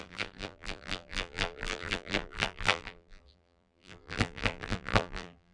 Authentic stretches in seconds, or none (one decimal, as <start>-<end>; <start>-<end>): none